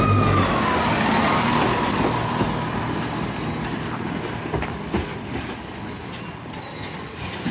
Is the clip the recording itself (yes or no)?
yes